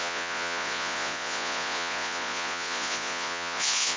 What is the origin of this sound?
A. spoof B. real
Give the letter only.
A